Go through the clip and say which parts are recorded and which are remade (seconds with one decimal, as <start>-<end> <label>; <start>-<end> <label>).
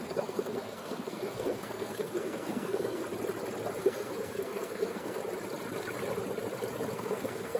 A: 0.0-3.0 remade; 3.0-3.8 recorded; 3.8-5.2 remade; 5.2-6.9 recorded; 6.9-7.6 remade